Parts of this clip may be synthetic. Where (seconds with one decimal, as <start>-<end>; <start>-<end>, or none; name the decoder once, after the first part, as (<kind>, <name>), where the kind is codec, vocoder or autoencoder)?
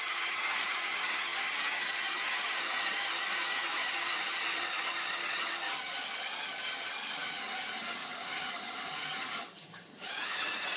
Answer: 0.0-10.8 (vocoder, HiFi-GAN)